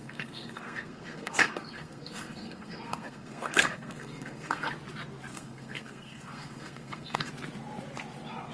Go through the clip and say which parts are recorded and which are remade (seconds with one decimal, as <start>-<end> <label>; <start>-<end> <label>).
0.0-4.7 remade; 4.7-5.3 recorded; 5.3-7.3 remade; 7.3-8.5 recorded